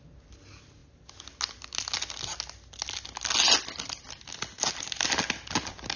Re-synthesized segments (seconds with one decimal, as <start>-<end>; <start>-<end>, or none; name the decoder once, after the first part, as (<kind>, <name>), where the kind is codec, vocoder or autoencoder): none